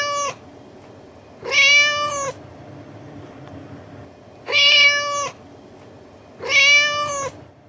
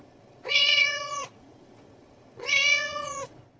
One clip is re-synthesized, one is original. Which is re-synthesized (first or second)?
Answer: second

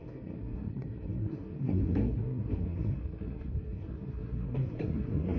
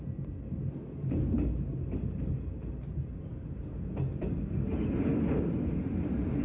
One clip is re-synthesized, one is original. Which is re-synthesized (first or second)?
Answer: first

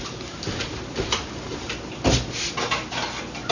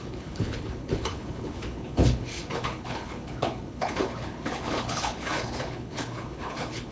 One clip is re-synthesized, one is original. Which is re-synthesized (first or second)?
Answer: second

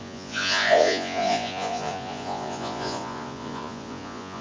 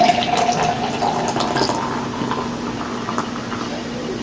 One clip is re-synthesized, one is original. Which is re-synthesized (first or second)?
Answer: first